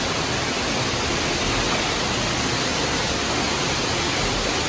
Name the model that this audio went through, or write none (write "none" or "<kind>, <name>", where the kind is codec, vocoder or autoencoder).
none